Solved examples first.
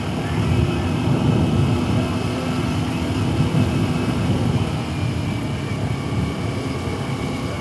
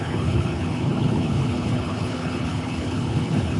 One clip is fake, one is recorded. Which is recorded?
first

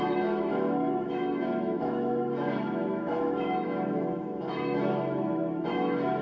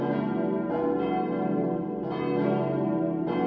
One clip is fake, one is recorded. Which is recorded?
second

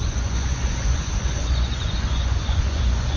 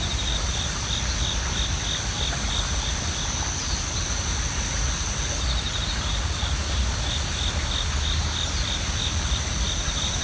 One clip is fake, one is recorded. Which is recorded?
second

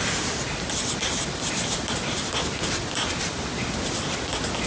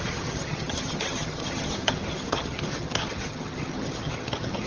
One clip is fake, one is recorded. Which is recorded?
first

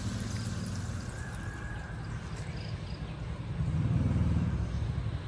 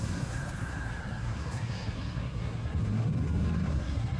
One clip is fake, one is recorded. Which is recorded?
first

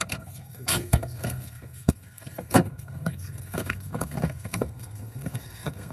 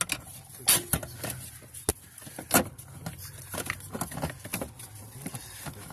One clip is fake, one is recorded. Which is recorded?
second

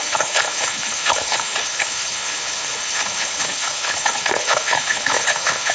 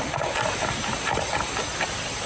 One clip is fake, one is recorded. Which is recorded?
second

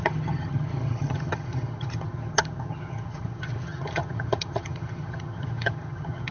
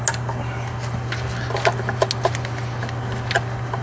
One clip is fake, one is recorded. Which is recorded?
second